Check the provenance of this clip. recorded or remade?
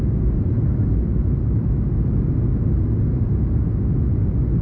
recorded